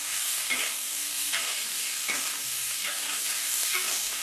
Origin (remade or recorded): remade